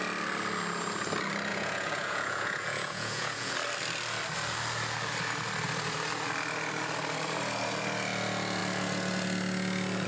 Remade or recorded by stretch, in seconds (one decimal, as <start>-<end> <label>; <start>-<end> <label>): 0.0-1.5 recorded; 1.5-3.5 remade; 3.5-10.1 recorded